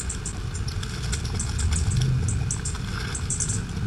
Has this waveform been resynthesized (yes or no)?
no